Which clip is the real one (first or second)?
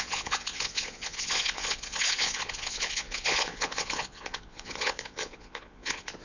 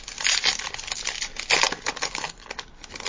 second